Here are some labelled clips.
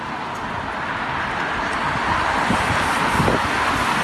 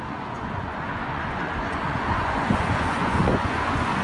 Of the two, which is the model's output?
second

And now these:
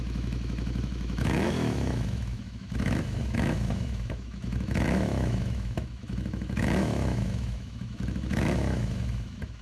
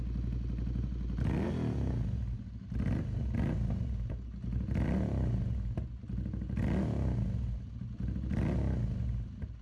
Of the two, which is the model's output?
first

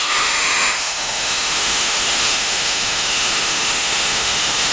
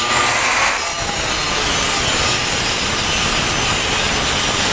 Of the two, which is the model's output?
first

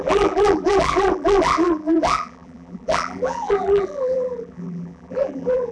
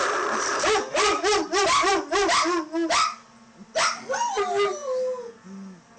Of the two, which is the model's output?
first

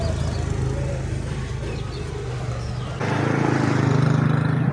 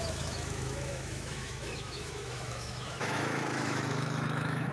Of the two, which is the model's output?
second